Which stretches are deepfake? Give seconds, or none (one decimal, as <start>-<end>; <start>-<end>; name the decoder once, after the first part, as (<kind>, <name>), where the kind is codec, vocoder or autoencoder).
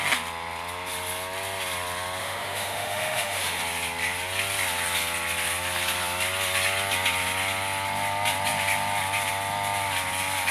2.2-3.6 (autoencoder, DAC-VAE)